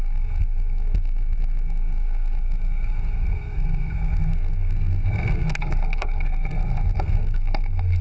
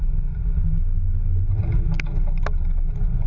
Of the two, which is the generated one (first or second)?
first